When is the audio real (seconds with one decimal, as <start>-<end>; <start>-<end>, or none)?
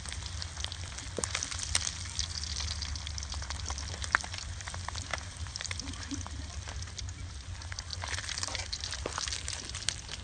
0.0-5.1; 6.4-10.2